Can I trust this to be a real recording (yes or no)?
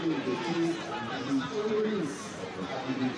yes